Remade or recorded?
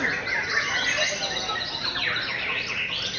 recorded